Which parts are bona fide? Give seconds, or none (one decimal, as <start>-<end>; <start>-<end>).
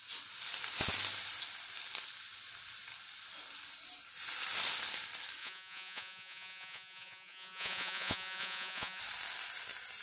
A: 0.0-5.4; 9.0-10.0